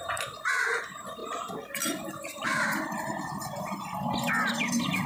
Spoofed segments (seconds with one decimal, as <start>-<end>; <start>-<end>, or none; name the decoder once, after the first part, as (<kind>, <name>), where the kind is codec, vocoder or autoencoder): none